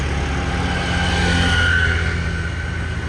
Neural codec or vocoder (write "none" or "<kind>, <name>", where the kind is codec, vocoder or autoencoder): none